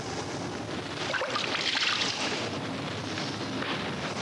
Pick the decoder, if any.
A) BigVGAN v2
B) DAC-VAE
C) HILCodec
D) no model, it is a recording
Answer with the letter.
D